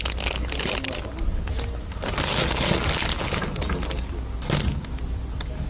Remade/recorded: recorded